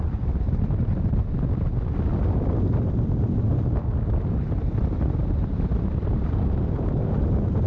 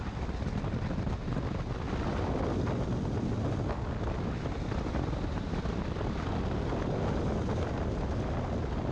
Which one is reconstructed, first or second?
first